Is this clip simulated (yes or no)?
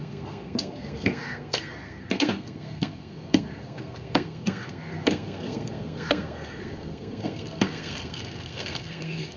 yes